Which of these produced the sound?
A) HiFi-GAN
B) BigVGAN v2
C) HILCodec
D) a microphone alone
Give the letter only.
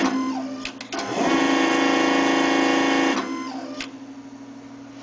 D